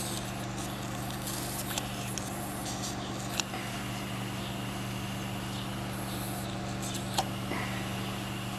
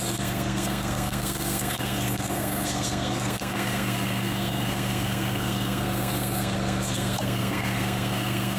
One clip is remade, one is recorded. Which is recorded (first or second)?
first